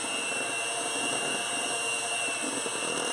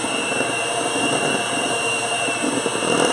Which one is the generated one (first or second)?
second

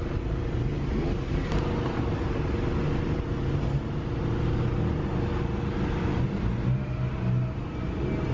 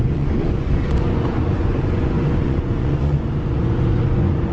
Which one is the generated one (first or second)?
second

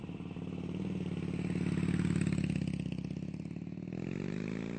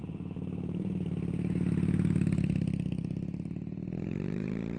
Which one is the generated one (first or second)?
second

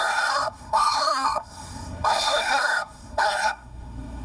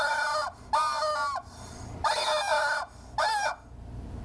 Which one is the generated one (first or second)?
first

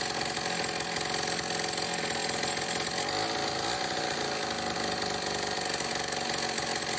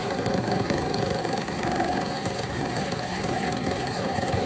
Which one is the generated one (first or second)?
second